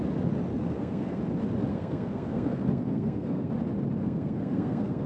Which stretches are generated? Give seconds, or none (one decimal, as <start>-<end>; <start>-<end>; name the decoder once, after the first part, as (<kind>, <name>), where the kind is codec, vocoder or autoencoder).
0.5-1.2 (codec, SNAC); 1.7-3.5; 4.0-5.1